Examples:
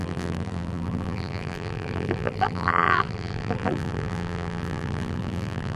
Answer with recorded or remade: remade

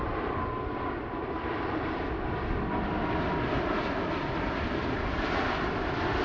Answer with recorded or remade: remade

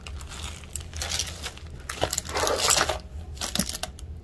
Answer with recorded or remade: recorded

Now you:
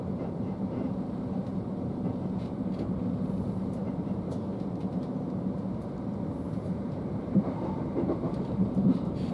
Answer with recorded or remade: remade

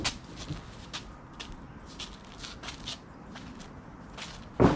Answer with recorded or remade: recorded